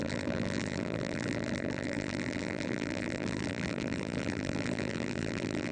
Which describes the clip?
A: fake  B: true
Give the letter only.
A